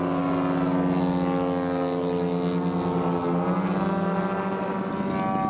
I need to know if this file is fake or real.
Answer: real